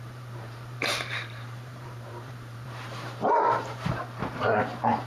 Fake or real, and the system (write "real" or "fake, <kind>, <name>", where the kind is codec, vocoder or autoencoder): fake, vocoder, BigVGAN v2